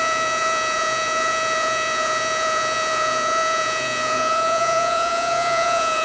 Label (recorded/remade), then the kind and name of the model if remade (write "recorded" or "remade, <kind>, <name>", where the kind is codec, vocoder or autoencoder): remade, vocoder, Vocos